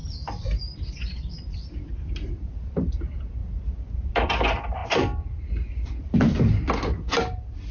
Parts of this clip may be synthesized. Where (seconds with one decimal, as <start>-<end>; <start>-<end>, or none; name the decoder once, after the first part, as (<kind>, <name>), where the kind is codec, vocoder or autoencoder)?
0.0-7.7 (vocoder, BigVGAN v2)